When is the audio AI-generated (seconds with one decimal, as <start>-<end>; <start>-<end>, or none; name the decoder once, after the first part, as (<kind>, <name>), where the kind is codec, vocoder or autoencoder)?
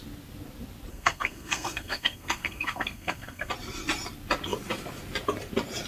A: 0.9-3.5 (codec, SNAC)